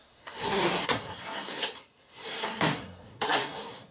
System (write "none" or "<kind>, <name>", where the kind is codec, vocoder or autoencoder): codec, SNAC